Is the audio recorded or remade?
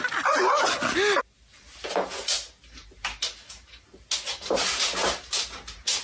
recorded